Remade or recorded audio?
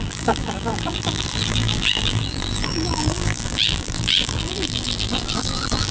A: remade